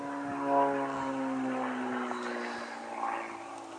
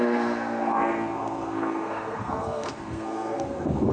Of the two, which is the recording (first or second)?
first